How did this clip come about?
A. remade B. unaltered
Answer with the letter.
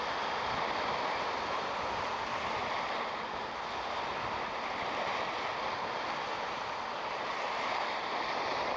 B